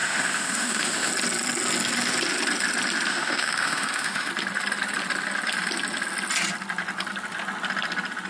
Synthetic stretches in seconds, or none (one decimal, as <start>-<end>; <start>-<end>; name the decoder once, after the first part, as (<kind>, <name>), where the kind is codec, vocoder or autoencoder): 0.0-1.1 (autoencoder, DAC-VAE); 3.1-4.3